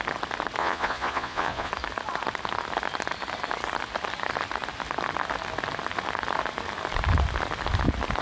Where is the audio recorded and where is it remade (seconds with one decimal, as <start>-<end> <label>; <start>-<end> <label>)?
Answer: 0.0-0.6 recorded; 0.6-1.7 remade; 1.7-8.2 recorded